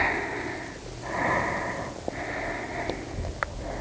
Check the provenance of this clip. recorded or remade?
recorded